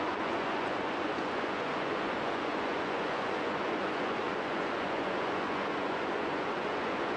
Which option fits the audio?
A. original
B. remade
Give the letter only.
B